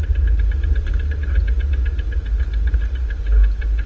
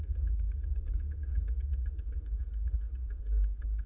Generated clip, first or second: second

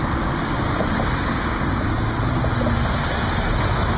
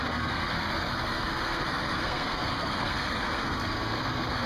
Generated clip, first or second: second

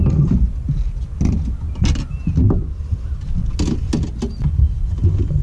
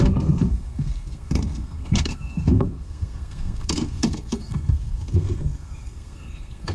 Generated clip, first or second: second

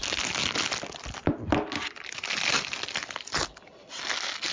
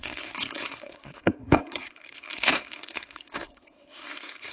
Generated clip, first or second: second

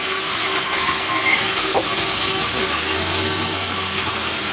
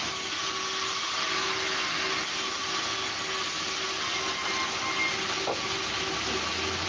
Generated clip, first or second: first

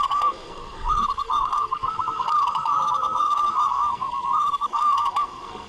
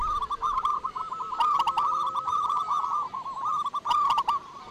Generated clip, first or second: first